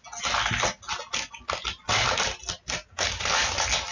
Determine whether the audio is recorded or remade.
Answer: recorded